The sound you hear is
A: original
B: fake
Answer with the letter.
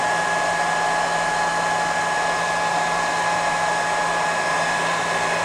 A